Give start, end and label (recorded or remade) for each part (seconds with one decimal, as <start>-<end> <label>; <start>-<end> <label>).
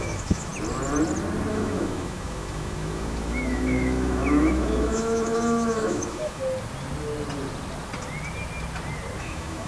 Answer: 0.0-0.5 remade; 0.5-1.5 recorded; 1.5-6.4 remade; 6.4-9.2 recorded; 9.2-9.7 remade